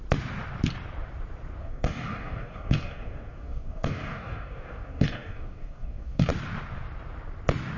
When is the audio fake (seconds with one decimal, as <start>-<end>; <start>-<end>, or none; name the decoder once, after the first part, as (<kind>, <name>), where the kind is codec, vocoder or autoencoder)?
1.6-6.3 (codec, DAC)